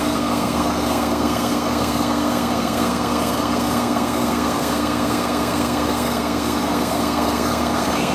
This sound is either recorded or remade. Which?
remade